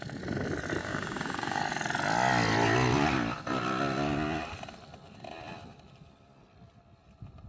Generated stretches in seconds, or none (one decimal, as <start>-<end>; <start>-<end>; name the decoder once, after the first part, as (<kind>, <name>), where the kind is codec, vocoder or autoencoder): 0.8-1.6 (codec, DAC)